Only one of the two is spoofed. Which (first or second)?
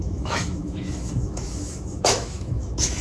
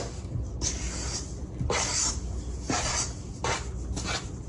first